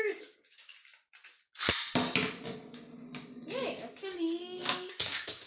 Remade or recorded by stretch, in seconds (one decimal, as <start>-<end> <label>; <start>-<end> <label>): 0.0-0.7 remade; 0.7-4.0 recorded; 4.0-5.5 remade